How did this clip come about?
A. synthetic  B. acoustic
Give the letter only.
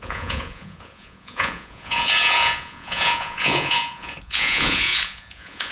A